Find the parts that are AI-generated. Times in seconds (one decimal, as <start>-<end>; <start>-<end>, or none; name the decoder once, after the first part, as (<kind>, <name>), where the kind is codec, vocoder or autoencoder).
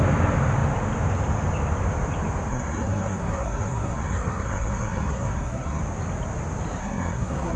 2.5-5.8 (codec, SNAC); 6.8-7.6